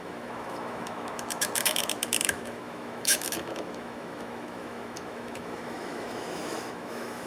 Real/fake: fake